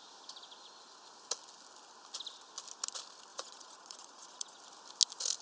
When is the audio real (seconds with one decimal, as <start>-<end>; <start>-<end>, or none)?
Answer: 0.0-3.3; 4.6-5.4